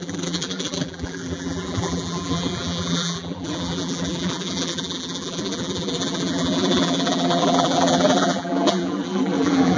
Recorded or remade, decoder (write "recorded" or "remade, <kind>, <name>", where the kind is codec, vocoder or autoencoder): remade, vocoder, BigVGAN v2